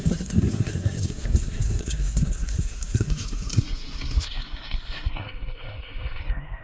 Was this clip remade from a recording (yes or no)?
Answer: yes